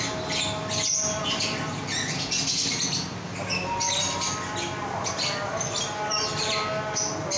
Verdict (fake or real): real